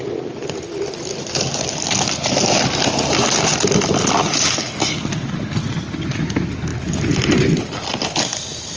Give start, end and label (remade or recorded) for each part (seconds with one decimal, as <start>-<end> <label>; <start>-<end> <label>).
0.0-6.7 recorded; 6.7-7.6 remade; 7.6-8.8 recorded